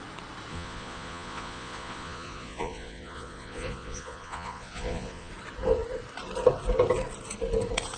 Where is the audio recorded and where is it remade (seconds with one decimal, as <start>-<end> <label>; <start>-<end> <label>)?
0.0-0.5 recorded; 0.5-5.3 remade; 5.3-8.0 recorded